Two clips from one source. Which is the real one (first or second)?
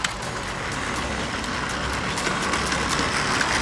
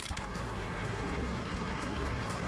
first